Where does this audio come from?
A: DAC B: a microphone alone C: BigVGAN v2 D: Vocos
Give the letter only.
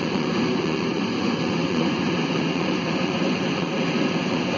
D